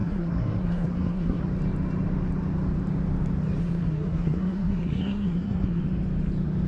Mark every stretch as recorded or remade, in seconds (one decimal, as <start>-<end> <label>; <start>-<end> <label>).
0.0-1.4 remade; 1.4-3.6 recorded; 3.6-5.8 remade; 5.8-6.7 recorded